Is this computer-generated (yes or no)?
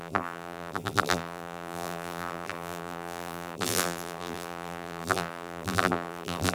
yes